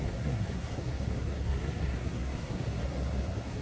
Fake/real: fake